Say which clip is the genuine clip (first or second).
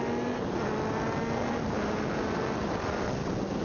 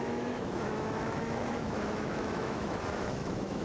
first